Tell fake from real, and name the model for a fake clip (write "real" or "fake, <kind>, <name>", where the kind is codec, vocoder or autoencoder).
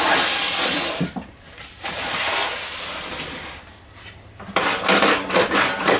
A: real